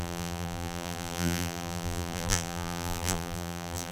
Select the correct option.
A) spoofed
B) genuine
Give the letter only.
A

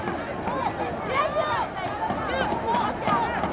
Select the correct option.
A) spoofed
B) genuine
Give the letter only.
B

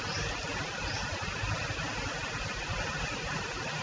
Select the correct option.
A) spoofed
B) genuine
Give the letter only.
B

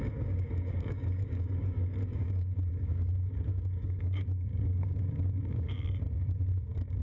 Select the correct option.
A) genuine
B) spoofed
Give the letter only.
B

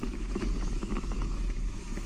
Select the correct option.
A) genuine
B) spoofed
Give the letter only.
B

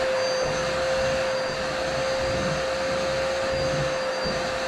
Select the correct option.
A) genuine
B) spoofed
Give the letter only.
A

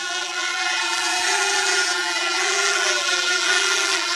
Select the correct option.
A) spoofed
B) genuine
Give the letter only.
A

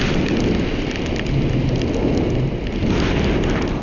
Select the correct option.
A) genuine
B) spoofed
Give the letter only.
A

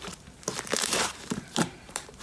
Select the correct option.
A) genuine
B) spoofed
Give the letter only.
B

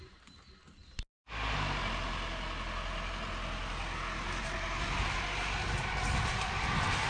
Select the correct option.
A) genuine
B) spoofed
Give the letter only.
A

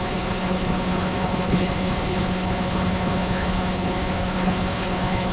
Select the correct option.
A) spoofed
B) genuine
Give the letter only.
A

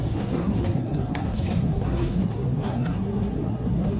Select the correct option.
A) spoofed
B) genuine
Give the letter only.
A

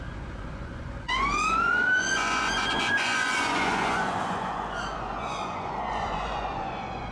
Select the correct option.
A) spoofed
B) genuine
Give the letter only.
A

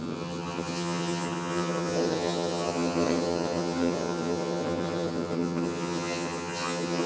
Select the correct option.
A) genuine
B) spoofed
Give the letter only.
B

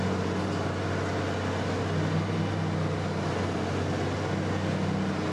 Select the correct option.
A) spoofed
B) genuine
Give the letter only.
B